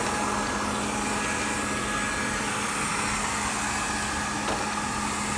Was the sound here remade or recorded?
recorded